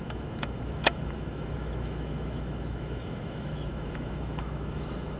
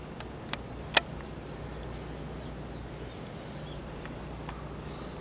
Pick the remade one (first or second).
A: first